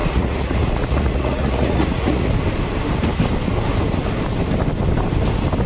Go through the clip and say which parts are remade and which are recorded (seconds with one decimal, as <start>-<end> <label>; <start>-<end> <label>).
0.0-2.3 remade; 2.3-5.7 recorded